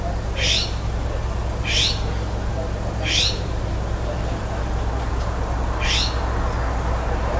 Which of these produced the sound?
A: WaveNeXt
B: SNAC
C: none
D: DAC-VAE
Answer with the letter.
C